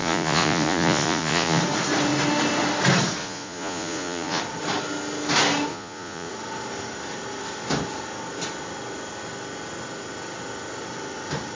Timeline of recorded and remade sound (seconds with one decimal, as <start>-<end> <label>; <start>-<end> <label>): 0.0-1.6 remade; 1.6-3.2 recorded; 3.2-4.4 remade; 4.4-5.7 recorded; 5.7-6.3 remade; 6.3-11.6 recorded